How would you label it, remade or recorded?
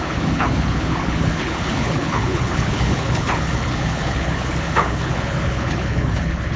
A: remade